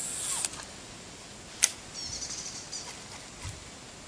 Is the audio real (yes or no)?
yes